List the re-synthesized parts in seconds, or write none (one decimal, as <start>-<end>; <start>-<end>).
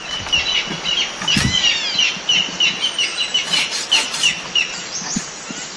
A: 3.1-3.8